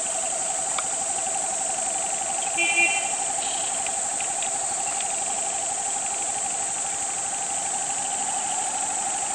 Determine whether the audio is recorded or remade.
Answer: recorded